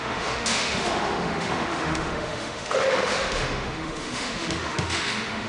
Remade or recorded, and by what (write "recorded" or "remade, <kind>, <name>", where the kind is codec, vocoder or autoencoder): remade, autoencoder, DAC-VAE